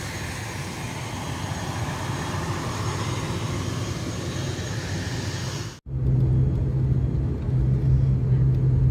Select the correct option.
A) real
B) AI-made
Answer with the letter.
A